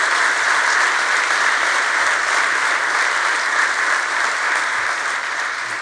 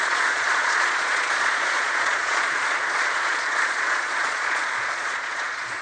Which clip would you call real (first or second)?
first